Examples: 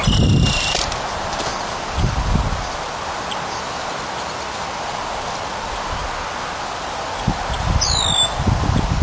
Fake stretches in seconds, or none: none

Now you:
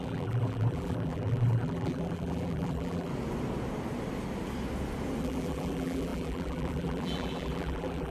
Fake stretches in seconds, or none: 0.0-3.1 (vocoder, BigVGAN v2); 5.2-8.1

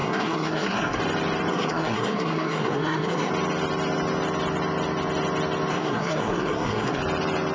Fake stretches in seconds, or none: 0.0-1.0 (codec, SNAC); 1.5-3.3; 5.7-7.0

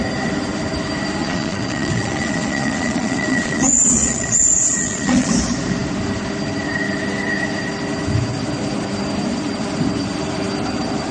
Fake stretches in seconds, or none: 1.2-5.3 (vocoder, Vocos)